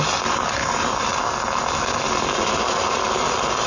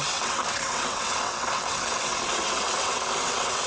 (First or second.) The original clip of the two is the first